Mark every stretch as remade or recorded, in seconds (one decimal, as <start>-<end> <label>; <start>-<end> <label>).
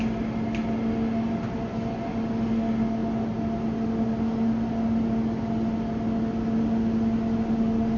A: 0.0-8.0 recorded